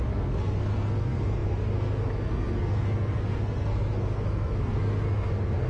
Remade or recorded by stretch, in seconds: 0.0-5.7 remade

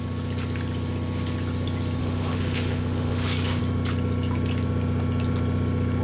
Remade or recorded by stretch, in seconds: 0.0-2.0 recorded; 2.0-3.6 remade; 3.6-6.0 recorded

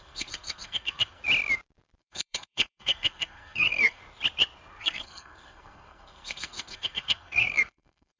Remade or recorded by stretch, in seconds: 0.0-1.2 remade; 1.2-2.0 recorded; 2.0-4.0 remade; 4.0-4.8 recorded; 4.8-8.2 remade

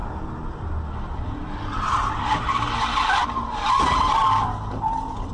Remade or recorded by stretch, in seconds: 0.0-5.3 recorded